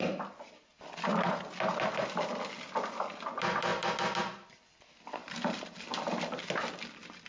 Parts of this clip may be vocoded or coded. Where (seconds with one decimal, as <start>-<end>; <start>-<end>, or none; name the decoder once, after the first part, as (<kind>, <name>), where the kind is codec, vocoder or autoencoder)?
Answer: 5.2-6.4 (vocoder, BigVGAN v2)